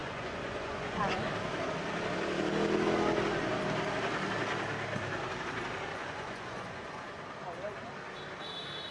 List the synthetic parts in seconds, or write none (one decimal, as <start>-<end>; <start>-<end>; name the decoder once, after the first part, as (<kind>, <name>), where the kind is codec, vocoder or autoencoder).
0.0-1.0 (vocoder, Vocos); 6.0-7.2